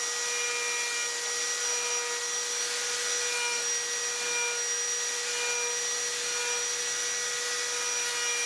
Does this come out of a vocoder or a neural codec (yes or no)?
no